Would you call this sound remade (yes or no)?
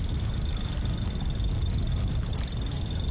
no